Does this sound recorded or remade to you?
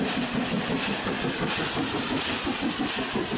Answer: recorded